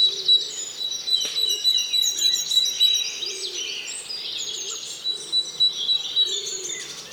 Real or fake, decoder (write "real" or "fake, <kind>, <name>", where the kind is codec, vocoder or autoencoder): real